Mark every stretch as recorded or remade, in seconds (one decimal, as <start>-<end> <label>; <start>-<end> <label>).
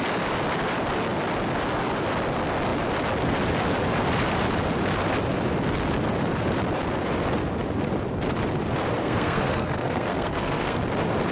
0.0-9.0 recorded; 9.0-10.8 remade; 10.8-11.3 recorded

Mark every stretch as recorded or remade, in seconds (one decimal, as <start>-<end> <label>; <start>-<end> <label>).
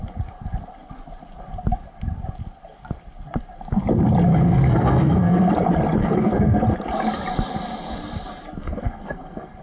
0.0-4.3 recorded; 4.3-5.5 remade; 5.5-6.0 recorded; 6.0-6.6 remade; 6.6-8.6 recorded; 8.6-9.6 remade